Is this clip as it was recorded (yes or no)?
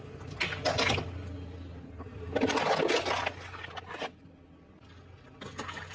yes